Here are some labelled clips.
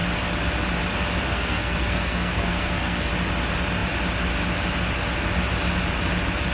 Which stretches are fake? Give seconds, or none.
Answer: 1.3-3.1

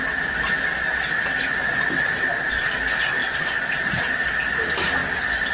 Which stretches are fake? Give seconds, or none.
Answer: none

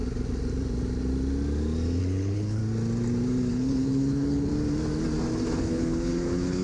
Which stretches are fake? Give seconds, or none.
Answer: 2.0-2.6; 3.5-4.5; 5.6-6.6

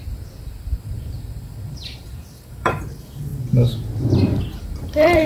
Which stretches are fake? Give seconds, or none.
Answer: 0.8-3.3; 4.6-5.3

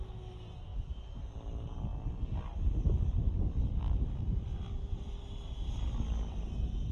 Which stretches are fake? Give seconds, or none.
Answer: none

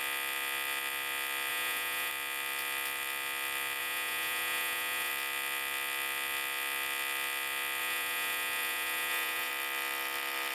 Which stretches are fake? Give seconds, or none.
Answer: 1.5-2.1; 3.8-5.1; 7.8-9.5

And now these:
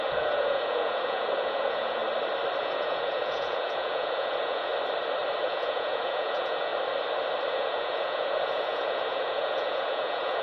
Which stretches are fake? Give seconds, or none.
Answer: 0.0-2.0; 2.6-4.7; 5.4-6.7; 7.5-10.4